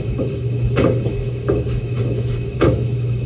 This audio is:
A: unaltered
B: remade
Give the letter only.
B